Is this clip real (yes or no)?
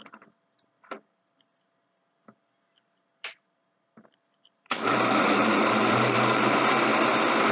no